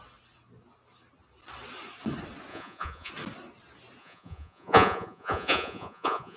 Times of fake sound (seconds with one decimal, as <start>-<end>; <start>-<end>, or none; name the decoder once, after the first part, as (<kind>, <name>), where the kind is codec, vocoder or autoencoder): 2.5-3.1 (vocoder, Vocos); 4.0-6.4